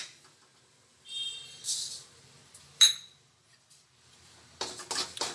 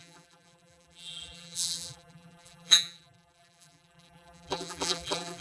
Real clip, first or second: first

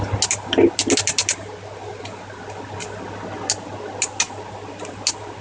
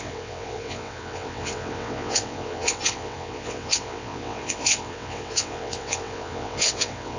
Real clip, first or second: first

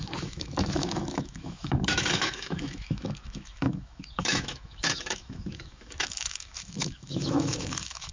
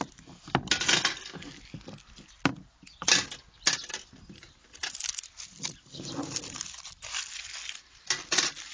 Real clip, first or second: second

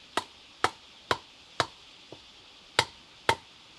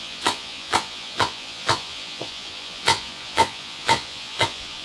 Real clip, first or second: first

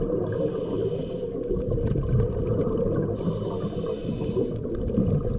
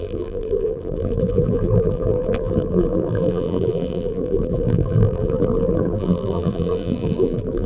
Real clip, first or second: first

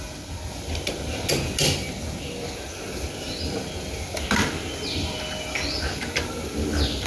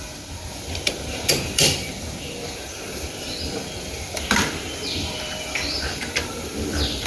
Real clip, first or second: first